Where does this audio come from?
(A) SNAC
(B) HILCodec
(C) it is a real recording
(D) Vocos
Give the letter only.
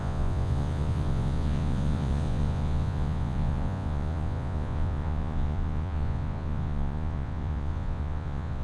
D